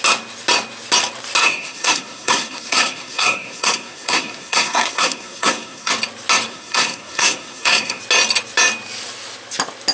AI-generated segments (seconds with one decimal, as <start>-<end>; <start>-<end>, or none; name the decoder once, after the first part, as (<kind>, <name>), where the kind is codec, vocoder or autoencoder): 1.4-5.9 (codec, SNAC); 6.5-8.0